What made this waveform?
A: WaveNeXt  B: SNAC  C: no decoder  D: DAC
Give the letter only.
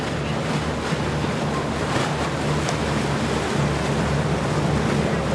C